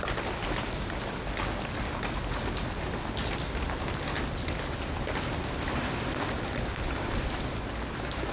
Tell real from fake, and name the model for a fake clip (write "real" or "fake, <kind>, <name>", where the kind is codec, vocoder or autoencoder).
real